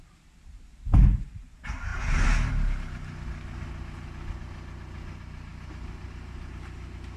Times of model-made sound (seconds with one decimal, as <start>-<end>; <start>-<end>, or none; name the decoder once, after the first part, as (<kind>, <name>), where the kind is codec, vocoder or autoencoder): none